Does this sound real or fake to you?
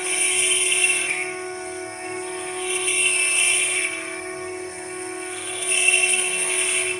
fake